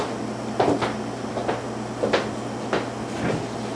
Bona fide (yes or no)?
yes